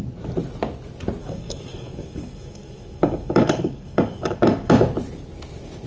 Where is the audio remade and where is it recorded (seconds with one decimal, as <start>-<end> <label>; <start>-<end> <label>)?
0.0-1.2 recorded; 1.2-4.7 remade; 4.7-5.9 recorded